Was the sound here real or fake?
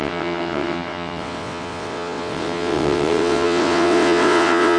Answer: fake